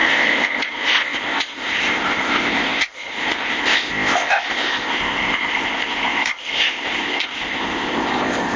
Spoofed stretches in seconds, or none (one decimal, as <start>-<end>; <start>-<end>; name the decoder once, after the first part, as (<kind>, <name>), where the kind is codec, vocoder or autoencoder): 0.0-8.6 (codec, ZipCodec)